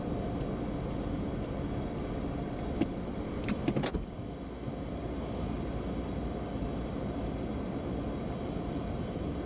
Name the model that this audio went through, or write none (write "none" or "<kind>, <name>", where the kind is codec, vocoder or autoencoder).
none